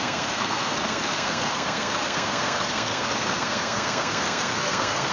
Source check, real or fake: fake